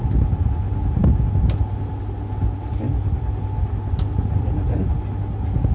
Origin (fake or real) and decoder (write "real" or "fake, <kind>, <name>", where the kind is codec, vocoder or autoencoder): real